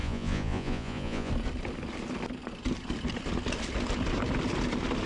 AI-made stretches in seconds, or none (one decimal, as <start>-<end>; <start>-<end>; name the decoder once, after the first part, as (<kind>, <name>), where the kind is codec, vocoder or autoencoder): 0.0-1.3 (vocoder, Vocos)

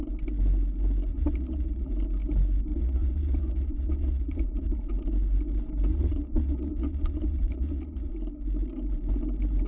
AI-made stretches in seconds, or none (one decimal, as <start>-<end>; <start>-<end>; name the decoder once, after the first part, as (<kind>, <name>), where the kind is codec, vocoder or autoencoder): 1.1-1.9 (vocoder, Vocos); 2.7-4.8; 5.9-8.1